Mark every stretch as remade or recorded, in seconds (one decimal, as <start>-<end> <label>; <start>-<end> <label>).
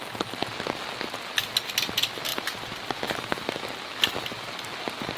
0.0-2.3 recorded; 2.3-3.7 remade; 3.7-5.2 recorded